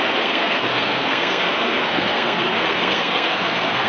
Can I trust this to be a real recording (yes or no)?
no